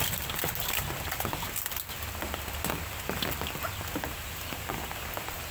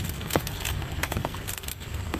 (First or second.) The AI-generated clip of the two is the second